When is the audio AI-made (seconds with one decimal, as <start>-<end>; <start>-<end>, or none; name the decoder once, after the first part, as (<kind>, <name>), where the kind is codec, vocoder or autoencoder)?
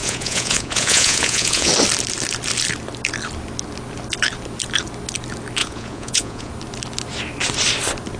0.0-1.7 (vocoder, Vocos); 5.6-6.5